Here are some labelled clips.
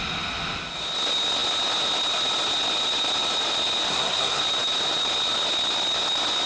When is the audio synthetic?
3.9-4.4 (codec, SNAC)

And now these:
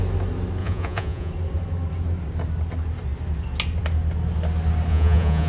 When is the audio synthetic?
0.6-1.3 (vocoder, Vocos); 4.9-5.5

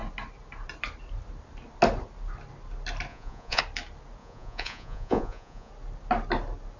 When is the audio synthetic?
3.1-3.6 (vocoder, Vocos); 4.2-5.7